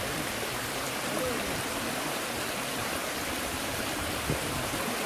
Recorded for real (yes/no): no